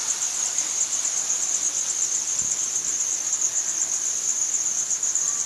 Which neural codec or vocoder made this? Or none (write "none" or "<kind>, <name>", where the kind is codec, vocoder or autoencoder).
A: none